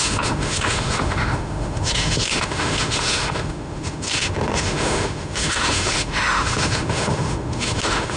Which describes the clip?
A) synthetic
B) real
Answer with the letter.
A